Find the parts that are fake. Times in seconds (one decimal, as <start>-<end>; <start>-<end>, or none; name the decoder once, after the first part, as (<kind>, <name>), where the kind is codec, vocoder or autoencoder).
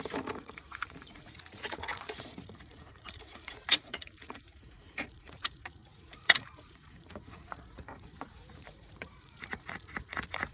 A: 0.0-10.5 (vocoder, Vocos)